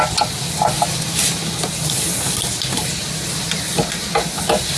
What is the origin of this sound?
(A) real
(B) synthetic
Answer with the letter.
A